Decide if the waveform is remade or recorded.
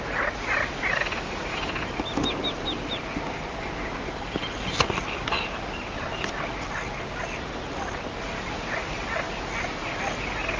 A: recorded